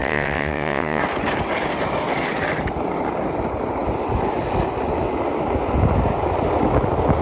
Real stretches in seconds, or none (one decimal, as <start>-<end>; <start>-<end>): 1.0-7.2